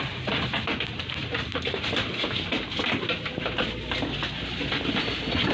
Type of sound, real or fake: real